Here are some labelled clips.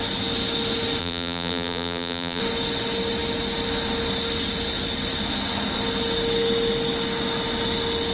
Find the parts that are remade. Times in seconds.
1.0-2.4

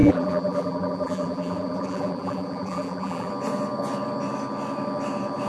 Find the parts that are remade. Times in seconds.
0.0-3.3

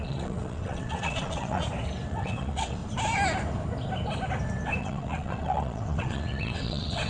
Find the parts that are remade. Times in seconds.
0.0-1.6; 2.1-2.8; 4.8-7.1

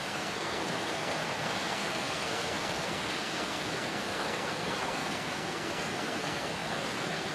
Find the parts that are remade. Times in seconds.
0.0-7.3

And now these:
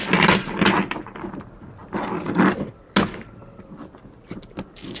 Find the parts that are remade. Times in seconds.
none